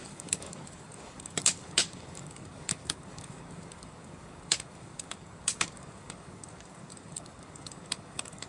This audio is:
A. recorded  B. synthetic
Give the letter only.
B